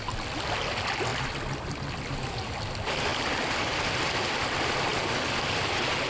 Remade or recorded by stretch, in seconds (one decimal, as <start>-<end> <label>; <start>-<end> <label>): 0.0-6.1 recorded